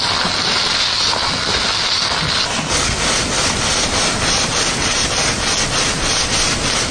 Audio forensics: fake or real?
real